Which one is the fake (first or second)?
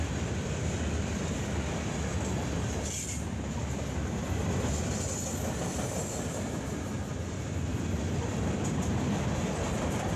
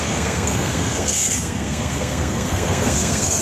second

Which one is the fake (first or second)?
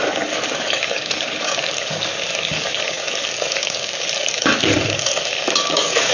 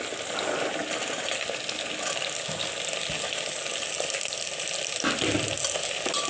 first